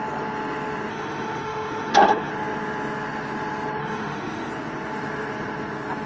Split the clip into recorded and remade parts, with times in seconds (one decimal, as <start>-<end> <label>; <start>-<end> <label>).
0.0-0.9 recorded; 0.9-2.3 remade; 2.3-3.8 recorded; 3.8-4.5 remade; 4.5-6.1 recorded

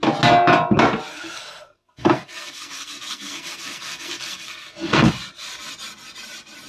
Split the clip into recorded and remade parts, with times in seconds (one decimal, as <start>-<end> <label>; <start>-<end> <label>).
0.0-1.1 recorded; 1.1-5.1 remade; 5.1-6.7 recorded

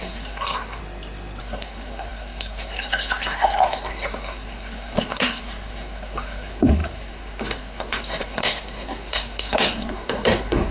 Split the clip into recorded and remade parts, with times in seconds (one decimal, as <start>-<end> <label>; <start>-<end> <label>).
0.0-0.8 remade; 0.8-1.4 recorded; 1.4-10.7 remade

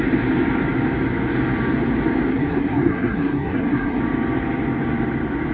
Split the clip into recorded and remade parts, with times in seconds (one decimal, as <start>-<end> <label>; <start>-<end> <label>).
0.0-2.3 recorded; 2.3-4.0 remade; 4.0-5.5 recorded

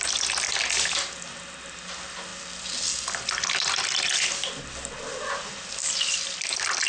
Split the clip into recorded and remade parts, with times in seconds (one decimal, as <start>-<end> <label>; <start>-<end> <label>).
0.0-6.9 recorded

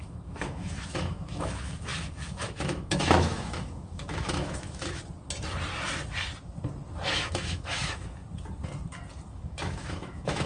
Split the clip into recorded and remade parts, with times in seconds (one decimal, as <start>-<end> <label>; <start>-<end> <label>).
0.0-5.0 remade; 5.0-7.1 recorded; 7.1-8.2 remade; 8.2-9.3 recorded; 9.3-10.5 remade

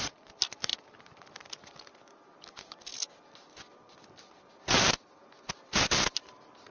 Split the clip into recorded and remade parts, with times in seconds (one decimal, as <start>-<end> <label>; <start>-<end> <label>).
0.0-6.7 recorded

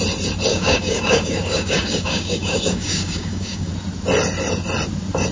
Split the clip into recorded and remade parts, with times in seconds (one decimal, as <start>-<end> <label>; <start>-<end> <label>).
0.0-0.5 recorded; 0.5-3.7 remade; 3.7-5.3 recorded